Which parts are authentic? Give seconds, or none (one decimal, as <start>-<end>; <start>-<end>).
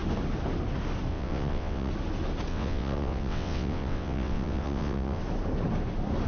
0.0-1.1; 1.9-2.5; 5.2-6.3